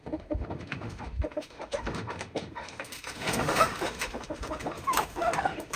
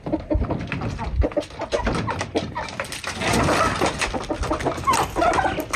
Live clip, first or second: second